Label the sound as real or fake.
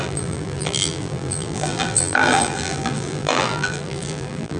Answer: fake